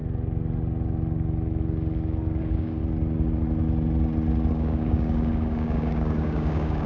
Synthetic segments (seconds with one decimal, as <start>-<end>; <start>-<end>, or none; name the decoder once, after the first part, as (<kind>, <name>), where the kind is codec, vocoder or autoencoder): 2.4-2.8 (codec, DAC); 4.5-6.9